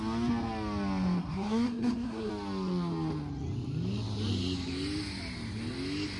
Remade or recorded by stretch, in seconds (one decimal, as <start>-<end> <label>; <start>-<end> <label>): 0.0-1.2 recorded; 1.2-2.3 remade; 2.3-6.2 recorded